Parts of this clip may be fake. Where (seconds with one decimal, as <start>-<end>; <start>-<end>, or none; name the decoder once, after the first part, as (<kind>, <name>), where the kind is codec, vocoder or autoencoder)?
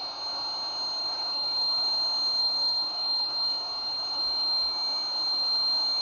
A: 1.0-1.9 (codec, DAC); 2.4-4.2